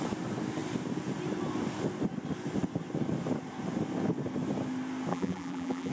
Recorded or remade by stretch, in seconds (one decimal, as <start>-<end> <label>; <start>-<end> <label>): 0.0-5.1 recorded; 5.1-5.9 remade